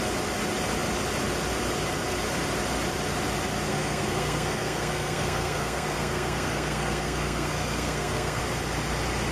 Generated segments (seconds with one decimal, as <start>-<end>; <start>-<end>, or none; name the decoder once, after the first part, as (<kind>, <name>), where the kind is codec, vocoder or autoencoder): 3.7-8.4 (codec, SNAC)